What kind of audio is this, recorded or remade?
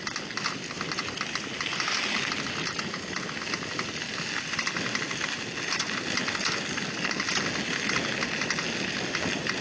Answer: recorded